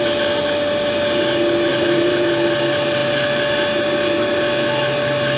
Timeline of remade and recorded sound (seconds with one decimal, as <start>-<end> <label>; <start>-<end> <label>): 0.0-1.7 recorded; 1.7-2.3 remade; 2.3-5.4 recorded